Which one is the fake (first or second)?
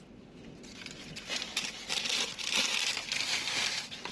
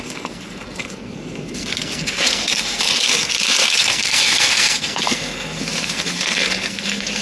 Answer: second